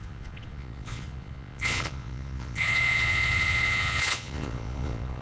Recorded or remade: remade